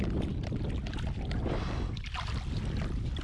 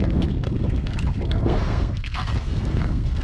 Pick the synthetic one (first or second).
second